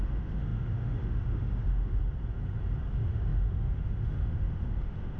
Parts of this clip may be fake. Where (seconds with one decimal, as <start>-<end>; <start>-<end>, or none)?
0.0-2.0; 2.9-5.2